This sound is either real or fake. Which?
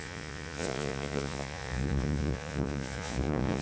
fake